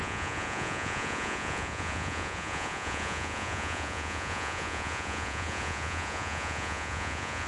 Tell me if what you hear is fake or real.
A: fake